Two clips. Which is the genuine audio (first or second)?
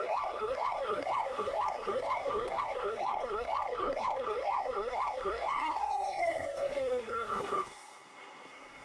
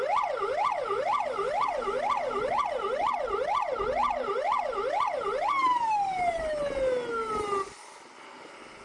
second